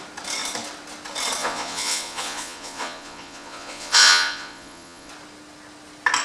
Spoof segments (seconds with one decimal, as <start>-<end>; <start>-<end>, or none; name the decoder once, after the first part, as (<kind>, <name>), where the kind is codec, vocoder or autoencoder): 1.4-5.1 (vocoder, Vocos)